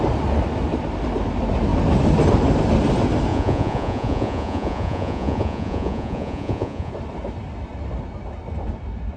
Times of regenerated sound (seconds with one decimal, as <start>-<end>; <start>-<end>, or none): 3.3-6.9